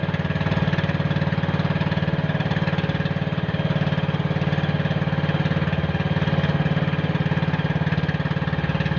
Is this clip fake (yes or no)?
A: no